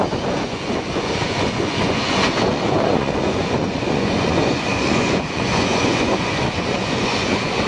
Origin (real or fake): fake